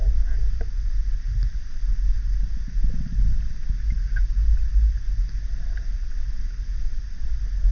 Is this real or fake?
real